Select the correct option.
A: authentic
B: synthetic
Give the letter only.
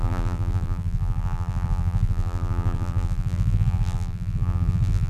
B